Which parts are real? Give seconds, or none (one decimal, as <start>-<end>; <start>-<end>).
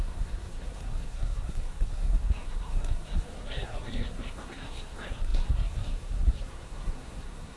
none